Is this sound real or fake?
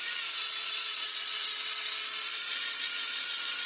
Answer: fake